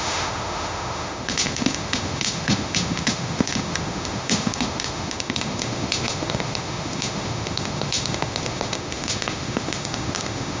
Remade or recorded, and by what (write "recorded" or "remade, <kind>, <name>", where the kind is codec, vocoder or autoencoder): remade, autoencoder, DAC-VAE